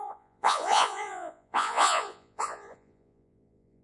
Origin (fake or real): fake